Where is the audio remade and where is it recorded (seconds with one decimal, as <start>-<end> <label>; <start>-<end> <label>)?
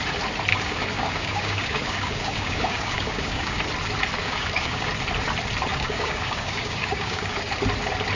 0.0-0.5 recorded; 0.5-3.6 remade; 3.6-4.2 recorded; 4.2-4.9 remade; 4.9-5.7 recorded; 5.7-7.4 remade; 7.4-8.2 recorded